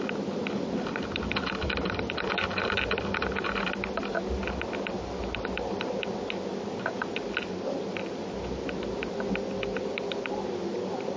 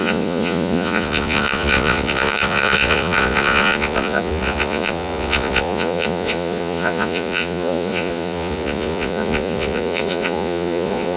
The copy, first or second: second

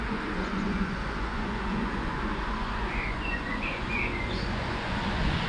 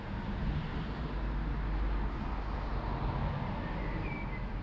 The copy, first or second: first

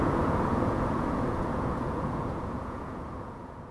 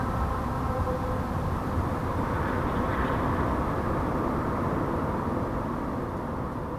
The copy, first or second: first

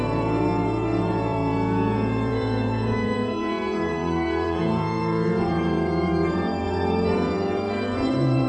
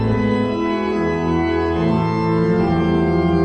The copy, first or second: first